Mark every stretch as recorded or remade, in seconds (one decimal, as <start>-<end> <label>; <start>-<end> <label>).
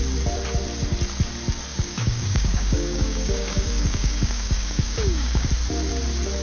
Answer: 0.0-1.7 recorded; 1.7-5.5 remade; 5.5-6.4 recorded